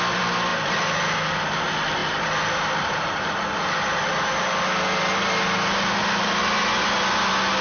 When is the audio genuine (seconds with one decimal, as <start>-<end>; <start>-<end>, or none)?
0.0-7.6